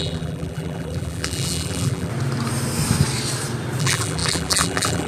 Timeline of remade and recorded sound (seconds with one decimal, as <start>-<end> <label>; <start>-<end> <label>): 0.0-2.1 remade; 2.1-3.8 recorded; 3.8-5.1 remade